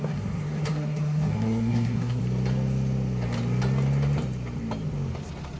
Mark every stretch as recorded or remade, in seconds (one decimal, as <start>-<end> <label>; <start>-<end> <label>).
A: 0.0-2.2 remade; 2.2-5.6 recorded